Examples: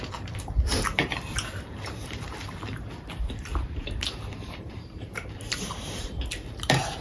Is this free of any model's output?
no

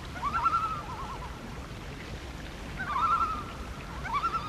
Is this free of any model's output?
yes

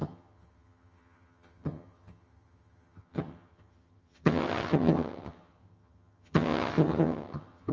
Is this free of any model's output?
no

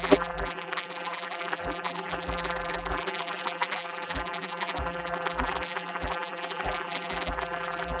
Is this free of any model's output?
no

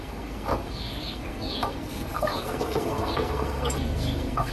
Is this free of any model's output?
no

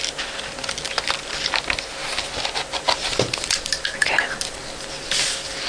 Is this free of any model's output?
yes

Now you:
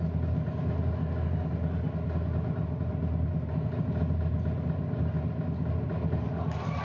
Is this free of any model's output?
yes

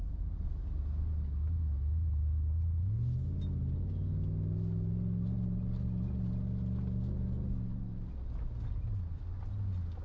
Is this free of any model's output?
yes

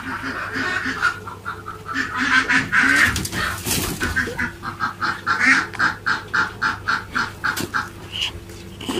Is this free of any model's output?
yes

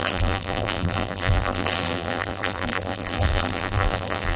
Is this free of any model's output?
no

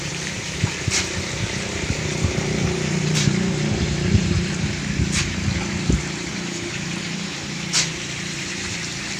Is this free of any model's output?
no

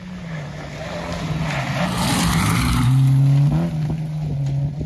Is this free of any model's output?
yes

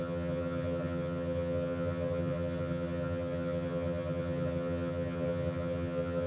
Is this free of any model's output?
no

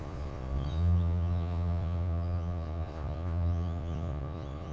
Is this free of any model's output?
no